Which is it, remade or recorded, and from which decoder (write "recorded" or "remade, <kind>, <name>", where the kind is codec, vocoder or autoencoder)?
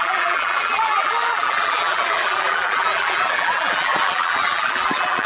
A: remade, vocoder, BigVGAN v2